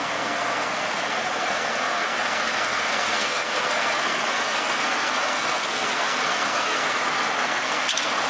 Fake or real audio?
fake